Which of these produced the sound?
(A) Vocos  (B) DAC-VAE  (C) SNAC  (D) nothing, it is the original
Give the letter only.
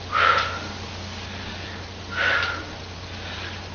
D